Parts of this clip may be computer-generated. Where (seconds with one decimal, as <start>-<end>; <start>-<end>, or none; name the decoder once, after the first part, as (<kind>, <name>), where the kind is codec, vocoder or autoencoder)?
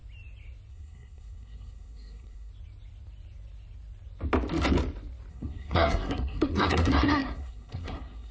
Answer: 0.7-2.5 (codec, SNAC); 5.3-8.3